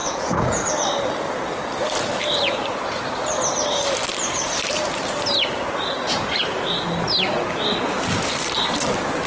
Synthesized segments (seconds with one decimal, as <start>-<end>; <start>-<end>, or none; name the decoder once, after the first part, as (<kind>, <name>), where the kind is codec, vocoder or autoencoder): 0.0-0.7 (vocoder, Vocos)